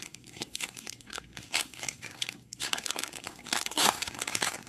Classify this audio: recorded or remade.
remade